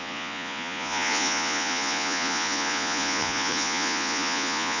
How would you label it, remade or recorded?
remade